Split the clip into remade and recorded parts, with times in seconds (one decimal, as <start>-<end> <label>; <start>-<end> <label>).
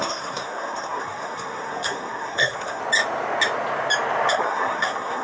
0.0-2.8 remade; 2.8-4.3 recorded; 4.3-5.2 remade